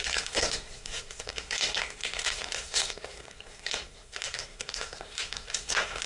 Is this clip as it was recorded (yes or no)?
no